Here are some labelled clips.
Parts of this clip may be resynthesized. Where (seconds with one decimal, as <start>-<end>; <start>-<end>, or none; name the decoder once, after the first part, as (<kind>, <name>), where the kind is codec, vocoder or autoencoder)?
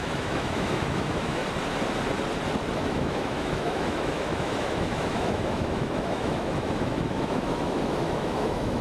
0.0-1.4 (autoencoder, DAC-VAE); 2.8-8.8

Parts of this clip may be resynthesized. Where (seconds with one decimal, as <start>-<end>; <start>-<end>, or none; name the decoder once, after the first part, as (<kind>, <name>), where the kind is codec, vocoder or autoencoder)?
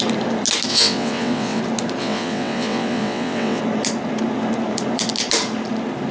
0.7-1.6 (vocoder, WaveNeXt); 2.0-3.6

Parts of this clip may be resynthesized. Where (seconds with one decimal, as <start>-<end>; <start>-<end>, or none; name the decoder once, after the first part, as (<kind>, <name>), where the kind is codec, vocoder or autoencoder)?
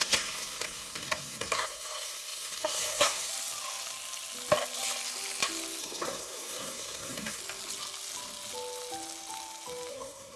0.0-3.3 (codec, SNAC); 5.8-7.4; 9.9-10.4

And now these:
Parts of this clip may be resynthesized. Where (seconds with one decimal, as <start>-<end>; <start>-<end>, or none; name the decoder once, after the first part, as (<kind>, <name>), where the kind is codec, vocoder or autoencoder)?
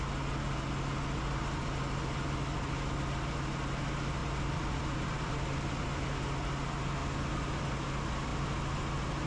4.2-5.8 (vocoder, BigVGAN v2)